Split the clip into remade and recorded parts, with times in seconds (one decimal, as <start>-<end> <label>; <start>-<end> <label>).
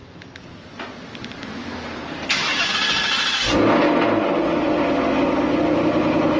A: 0.0-6.4 recorded